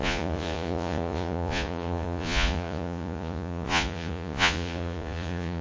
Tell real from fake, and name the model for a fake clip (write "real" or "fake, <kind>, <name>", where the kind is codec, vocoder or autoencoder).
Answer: fake, vocoder, Vocos